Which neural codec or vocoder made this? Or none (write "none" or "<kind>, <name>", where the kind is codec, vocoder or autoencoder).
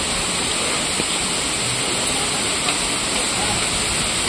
none